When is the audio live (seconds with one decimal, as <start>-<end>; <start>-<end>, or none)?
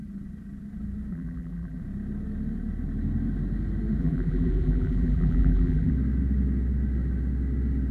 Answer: 0.0-1.1; 1.8-4.0; 5.9-7.9